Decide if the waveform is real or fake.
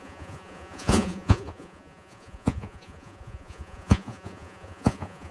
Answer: fake